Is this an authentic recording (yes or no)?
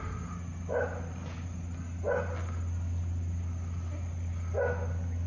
yes